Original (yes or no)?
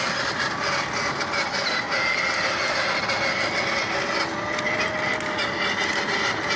yes